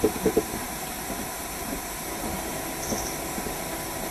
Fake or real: real